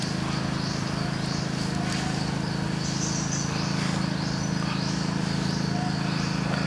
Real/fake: real